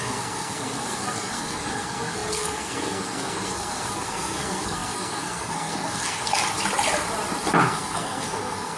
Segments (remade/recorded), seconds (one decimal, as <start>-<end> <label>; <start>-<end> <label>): 0.0-6.4 remade; 6.4-7.6 recorded; 7.6-8.8 remade